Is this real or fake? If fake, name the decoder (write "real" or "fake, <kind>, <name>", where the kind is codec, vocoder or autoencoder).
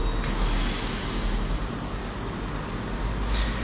real